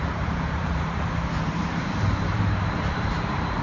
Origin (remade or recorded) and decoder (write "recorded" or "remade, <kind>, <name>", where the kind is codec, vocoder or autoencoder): remade, vocoder, BigVGAN v2